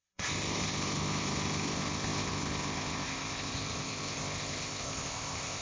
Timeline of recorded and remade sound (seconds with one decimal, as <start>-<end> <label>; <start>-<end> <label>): 0.0-5.6 remade